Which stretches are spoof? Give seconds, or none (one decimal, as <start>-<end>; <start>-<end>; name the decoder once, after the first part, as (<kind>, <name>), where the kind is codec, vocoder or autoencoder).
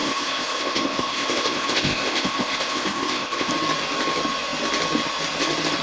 0.0-3.5 (codec, ZipCodec)